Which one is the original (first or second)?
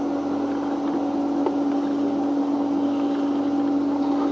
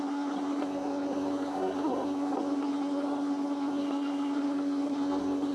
first